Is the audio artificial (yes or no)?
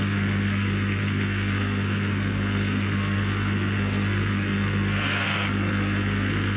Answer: yes